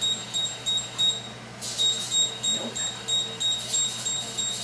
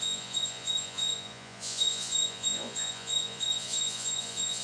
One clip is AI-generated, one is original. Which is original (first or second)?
first